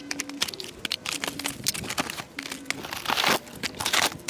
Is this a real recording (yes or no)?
yes